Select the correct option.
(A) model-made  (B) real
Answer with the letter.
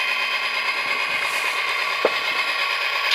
B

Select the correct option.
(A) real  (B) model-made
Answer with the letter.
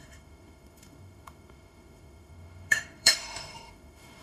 B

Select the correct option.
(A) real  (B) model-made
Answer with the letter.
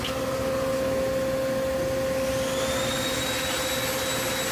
A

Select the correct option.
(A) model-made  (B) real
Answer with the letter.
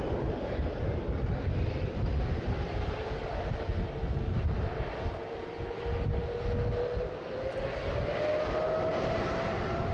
B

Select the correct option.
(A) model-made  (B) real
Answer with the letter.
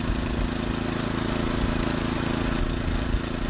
B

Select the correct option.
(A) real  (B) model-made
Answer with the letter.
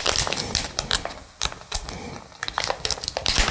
B